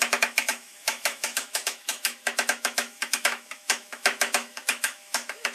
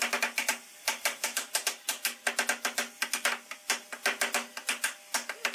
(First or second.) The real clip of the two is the second